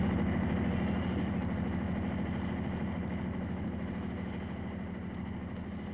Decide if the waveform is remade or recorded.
recorded